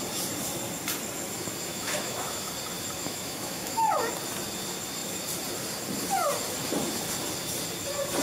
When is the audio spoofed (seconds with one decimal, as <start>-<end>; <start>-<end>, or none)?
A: 1.7-2.5; 3.0-4.0